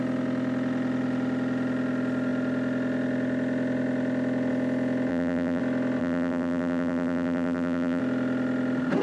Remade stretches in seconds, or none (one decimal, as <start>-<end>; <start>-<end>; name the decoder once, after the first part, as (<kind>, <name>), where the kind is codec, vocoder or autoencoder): 5.1-5.6 (vocoder, BigVGAN v2); 6.0-8.0